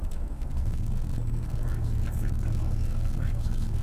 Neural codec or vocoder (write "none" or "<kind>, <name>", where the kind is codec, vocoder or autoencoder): codec, SNAC